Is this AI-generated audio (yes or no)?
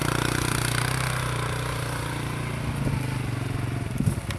no